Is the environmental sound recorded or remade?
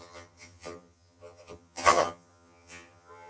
remade